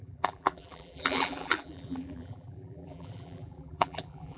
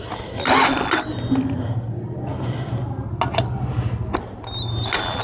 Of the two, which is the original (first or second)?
second